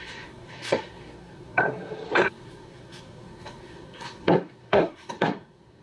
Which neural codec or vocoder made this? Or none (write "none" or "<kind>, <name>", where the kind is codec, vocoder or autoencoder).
codec, SNAC